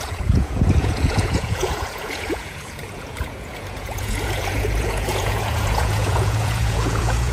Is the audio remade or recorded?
remade